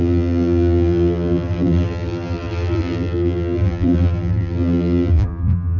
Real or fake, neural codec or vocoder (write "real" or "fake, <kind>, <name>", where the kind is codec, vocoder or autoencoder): fake, vocoder, BigVGAN v2